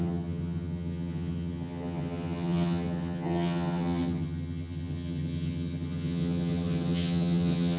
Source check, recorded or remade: remade